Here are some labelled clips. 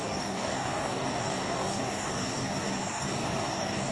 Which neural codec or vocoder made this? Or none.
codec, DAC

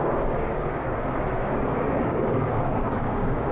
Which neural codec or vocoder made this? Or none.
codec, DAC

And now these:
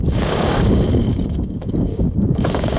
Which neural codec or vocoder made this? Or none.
codec, DAC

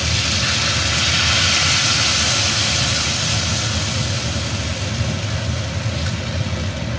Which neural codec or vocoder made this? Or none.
none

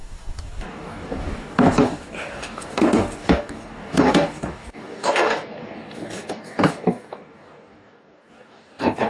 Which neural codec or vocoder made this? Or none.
codec, DAC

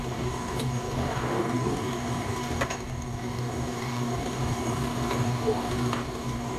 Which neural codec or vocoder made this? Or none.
codec, DAC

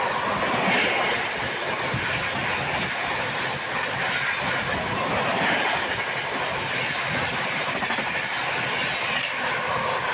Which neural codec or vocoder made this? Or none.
none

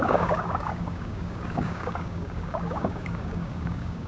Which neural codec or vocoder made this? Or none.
codec, DAC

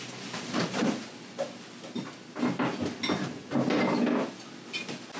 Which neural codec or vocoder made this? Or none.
none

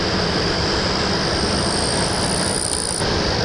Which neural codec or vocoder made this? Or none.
none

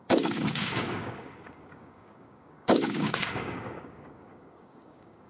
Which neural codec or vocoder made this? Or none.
codec, DAC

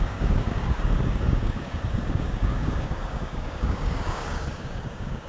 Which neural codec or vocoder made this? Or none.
codec, DAC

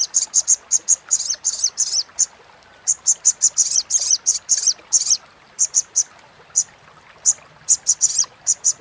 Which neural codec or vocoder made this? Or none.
none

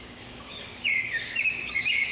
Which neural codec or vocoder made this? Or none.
codec, DAC